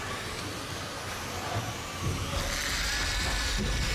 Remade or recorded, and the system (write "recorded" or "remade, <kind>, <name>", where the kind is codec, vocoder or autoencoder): recorded